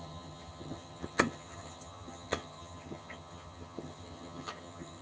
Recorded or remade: remade